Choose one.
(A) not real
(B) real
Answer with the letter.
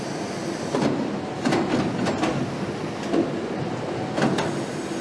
B